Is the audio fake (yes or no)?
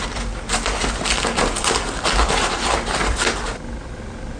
no